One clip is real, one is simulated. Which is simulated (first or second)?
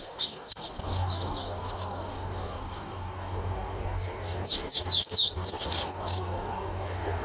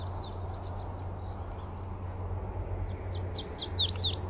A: first